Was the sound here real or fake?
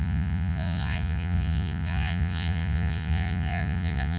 fake